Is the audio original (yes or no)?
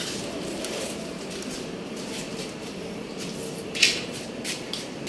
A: yes